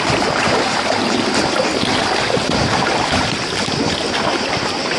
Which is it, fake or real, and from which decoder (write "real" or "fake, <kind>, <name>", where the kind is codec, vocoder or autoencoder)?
real